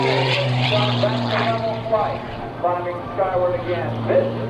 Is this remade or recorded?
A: remade